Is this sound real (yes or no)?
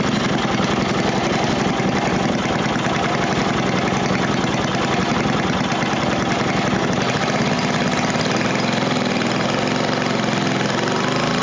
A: yes